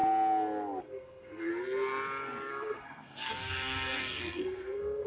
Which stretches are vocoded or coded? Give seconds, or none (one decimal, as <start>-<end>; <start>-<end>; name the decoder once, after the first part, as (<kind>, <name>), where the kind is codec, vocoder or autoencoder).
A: 0.8-1.5 (codec, SNAC); 2.5-5.1